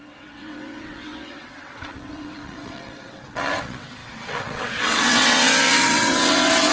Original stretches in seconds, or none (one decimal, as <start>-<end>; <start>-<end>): none